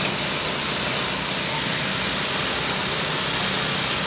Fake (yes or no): no